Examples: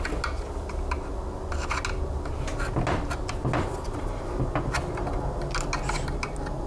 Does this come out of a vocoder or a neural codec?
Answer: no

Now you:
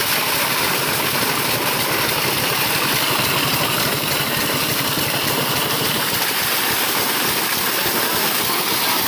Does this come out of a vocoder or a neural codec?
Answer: no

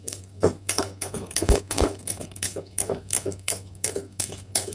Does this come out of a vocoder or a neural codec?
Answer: yes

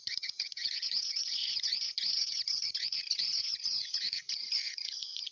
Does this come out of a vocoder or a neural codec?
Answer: yes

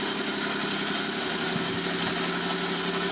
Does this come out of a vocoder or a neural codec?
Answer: no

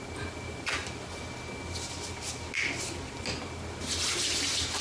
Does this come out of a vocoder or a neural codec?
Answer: no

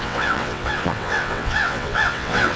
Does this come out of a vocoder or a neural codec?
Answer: yes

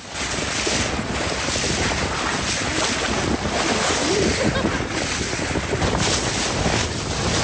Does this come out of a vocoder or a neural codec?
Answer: no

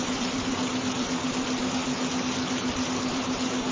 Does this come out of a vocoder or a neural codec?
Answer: yes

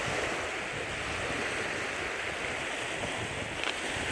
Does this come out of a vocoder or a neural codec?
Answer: no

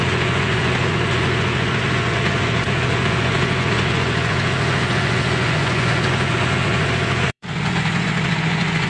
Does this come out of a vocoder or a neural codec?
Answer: yes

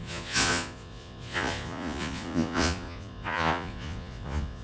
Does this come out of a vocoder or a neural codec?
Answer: yes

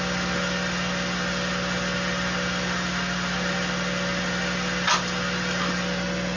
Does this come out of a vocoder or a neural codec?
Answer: no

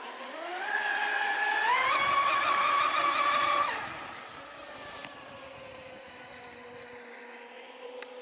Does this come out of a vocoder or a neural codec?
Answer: no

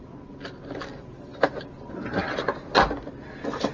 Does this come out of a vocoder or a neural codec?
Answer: no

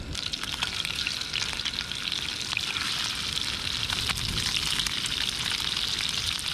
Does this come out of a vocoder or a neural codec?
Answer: no